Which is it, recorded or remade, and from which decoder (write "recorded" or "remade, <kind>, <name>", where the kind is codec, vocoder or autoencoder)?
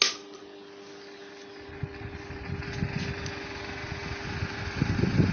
recorded